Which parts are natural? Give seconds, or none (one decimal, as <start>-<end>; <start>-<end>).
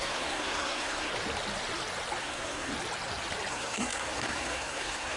1.1-2.2; 2.7-3.5